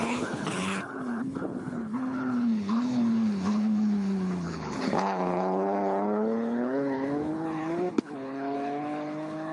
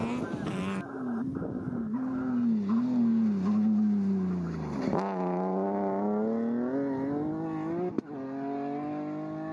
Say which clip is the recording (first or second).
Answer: second